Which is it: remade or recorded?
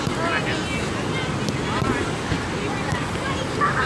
recorded